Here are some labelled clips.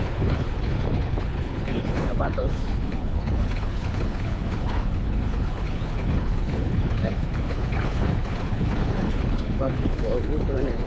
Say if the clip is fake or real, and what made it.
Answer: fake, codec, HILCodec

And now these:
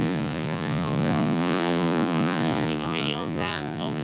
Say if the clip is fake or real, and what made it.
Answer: fake, vocoder, Vocos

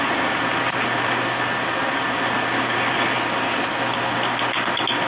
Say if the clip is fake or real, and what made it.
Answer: real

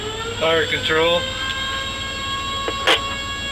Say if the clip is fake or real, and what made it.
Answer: real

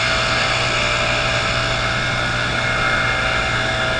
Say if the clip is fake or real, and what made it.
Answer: real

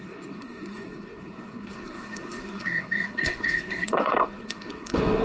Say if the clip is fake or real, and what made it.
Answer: fake, codec, SNAC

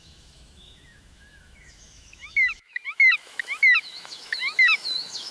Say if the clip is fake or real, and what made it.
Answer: fake, autoencoder, DAC-VAE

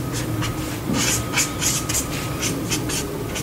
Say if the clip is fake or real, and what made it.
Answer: real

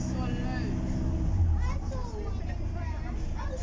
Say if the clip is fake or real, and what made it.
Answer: real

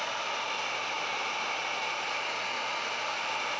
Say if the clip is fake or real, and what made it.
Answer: real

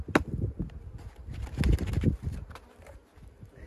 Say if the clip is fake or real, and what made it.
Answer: real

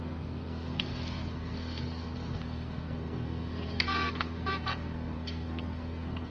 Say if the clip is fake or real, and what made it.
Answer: fake, codec, SNAC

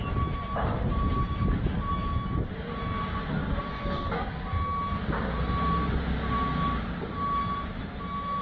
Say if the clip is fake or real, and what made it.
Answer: real